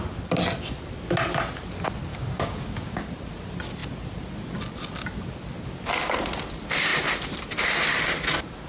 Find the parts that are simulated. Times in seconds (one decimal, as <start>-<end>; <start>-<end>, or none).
2.1-3.1